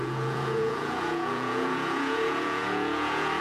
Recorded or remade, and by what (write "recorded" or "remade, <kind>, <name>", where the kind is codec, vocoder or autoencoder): remade, vocoder, Vocos